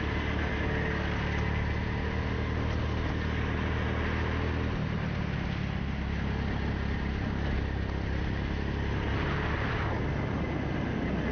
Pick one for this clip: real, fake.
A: real